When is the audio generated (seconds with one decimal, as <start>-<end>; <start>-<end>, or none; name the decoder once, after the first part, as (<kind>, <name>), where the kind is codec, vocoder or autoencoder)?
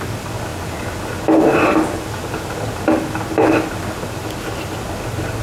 none